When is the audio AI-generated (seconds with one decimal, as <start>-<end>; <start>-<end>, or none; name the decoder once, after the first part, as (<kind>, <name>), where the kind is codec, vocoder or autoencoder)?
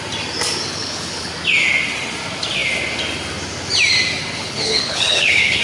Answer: 0.7-1.3 (codec, HILCodec); 4.4-5.6